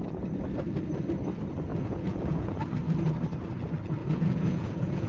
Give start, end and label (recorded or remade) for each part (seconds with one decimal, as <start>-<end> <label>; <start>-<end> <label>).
0.0-1.7 recorded; 1.7-2.6 remade; 2.6-4.0 recorded; 4.0-5.1 remade